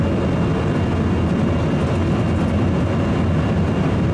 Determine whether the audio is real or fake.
real